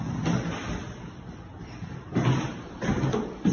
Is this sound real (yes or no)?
no